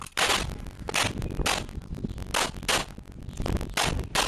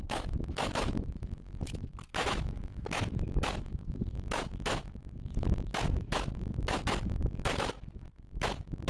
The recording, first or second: first